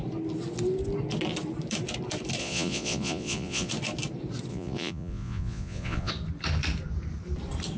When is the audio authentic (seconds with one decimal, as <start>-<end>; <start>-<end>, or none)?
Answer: 0.0-2.4; 3.7-4.5; 6.1-7.8